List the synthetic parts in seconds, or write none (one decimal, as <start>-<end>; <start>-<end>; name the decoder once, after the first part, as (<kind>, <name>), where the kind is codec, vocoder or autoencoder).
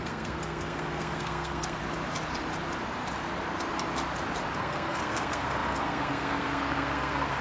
0.0-1.8 (codec, SNAC); 4.6-7.4